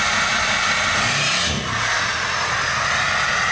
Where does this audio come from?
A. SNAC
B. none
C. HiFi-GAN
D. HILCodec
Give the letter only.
B